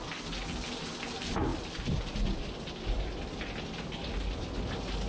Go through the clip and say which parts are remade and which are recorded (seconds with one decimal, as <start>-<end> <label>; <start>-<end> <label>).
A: 0.0-5.1 recorded